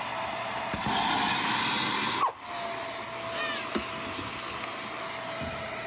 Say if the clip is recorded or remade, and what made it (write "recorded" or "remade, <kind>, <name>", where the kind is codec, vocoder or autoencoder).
recorded